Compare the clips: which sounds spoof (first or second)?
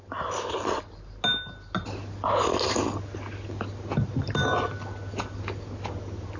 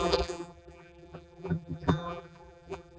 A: second